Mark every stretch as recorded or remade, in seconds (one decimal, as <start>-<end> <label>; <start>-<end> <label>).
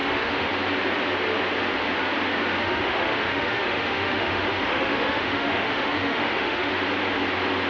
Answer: 0.0-0.5 remade; 0.5-2.6 recorded; 2.6-6.7 remade; 6.7-7.7 recorded